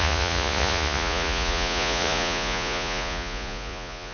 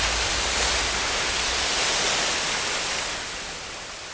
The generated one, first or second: first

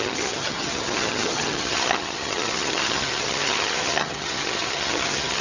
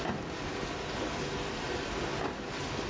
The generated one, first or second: first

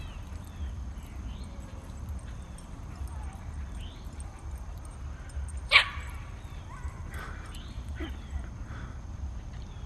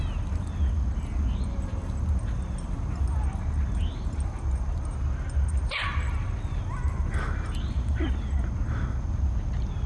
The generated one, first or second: first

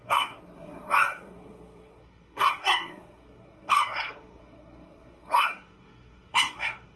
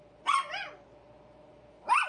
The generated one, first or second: first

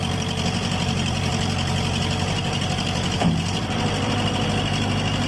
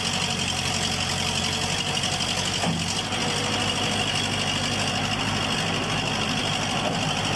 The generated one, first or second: first